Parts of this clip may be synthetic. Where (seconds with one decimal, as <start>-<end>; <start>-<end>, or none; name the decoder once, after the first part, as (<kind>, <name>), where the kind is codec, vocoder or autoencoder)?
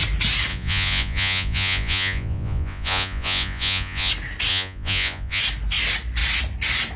0.5-4.1 (vocoder, Vocos); 4.5-5.4